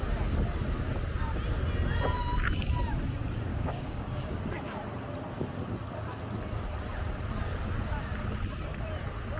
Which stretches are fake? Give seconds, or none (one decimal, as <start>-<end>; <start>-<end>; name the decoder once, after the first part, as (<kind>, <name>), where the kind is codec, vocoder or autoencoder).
3.5-4.4 (codec, DAC)